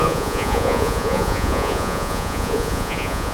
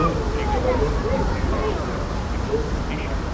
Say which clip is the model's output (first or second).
first